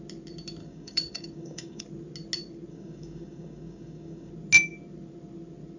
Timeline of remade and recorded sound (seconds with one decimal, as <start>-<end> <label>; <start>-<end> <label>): 0.0-0.6 recorded; 0.6-1.8 remade; 1.8-2.7 recorded; 2.7-4.3 remade; 4.3-5.8 recorded